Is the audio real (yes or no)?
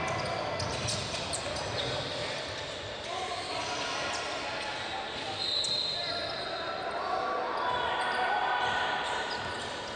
yes